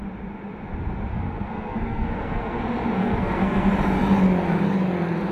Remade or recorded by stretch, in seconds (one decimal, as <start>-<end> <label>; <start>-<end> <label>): 0.0-1.1 recorded; 1.1-2.6 remade; 2.6-3.0 recorded; 3.0-3.7 remade; 3.7-5.3 recorded